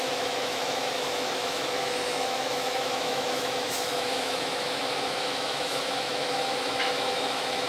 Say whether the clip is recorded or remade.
remade